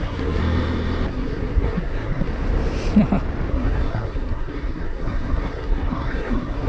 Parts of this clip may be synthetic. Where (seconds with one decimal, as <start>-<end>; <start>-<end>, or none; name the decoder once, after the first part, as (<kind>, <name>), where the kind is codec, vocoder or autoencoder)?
0.0-0.4 (codec, SNAC); 1.1-2.3; 3.5-6.7